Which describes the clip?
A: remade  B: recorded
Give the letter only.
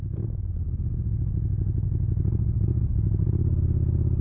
B